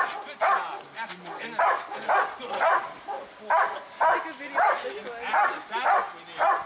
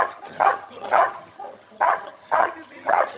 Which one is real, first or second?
first